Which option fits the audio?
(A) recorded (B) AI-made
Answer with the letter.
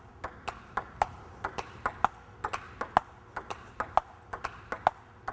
A